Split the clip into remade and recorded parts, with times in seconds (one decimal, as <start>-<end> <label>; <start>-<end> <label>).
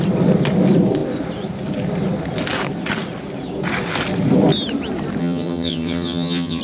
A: 0.0-5.2 recorded; 5.2-6.6 remade